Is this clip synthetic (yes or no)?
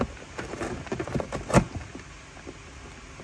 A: no